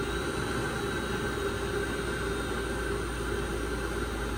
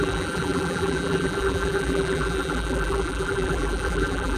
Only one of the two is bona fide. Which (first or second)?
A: first